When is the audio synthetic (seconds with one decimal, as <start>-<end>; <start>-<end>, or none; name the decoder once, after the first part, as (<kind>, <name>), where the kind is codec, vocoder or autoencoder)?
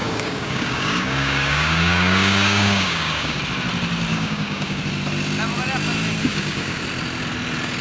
0.0-3.4 (codec, DAC); 4.1-4.8; 6.2-6.8